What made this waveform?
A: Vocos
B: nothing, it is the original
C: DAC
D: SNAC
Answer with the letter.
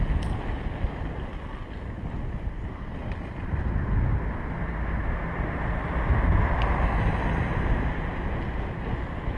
B